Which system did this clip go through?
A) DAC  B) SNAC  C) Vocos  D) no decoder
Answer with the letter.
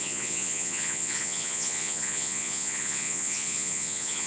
C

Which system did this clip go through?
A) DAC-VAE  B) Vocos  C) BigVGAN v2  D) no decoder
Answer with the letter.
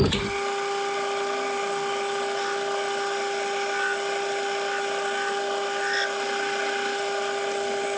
D